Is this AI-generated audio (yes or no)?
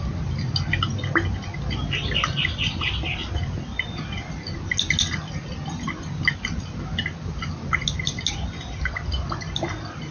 no